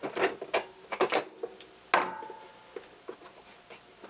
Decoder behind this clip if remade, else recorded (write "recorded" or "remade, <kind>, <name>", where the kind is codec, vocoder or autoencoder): recorded